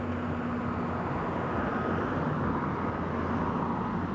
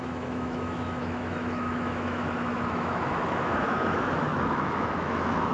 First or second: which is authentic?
first